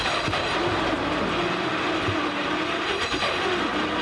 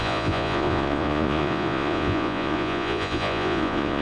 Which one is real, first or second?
first